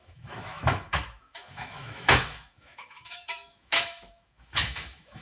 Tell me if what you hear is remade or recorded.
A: remade